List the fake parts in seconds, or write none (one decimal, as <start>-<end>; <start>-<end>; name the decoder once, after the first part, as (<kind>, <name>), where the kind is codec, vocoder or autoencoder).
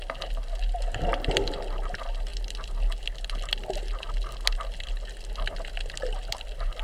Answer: none